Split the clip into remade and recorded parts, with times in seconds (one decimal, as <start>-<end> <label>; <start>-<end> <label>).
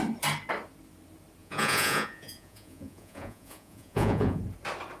0.0-1.4 recorded; 1.4-4.4 remade; 4.4-5.0 recorded